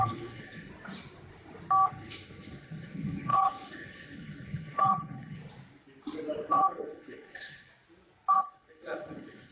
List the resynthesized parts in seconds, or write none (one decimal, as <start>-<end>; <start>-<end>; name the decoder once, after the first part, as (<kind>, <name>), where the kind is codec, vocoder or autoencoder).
0.0-0.7 (codec, HILCodec); 1.9-5.4; 6.5-7.7; 8.3-9.5